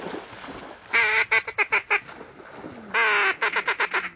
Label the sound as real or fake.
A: real